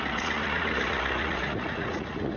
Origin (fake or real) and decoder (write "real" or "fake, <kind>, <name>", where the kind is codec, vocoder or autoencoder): fake, vocoder, Vocos